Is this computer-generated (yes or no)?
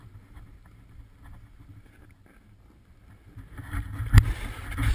no